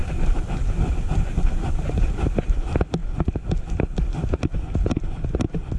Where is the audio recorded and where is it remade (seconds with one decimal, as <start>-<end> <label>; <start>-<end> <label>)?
0.0-2.5 remade; 2.5-5.8 recorded